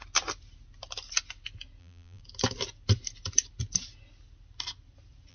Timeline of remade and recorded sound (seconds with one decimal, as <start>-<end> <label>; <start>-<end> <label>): 0.0-1.8 recorded; 1.8-2.2 remade; 2.2-5.3 recorded